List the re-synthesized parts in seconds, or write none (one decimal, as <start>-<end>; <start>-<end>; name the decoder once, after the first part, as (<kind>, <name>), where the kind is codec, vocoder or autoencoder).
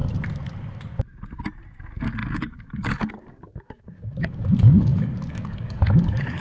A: 1.8-6.4 (codec, DAC)